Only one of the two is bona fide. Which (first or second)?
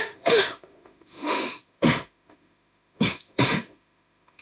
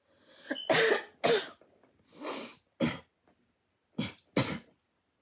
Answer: second